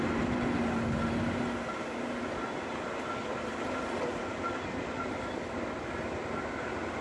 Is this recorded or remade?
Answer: recorded